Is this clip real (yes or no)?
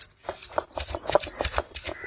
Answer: yes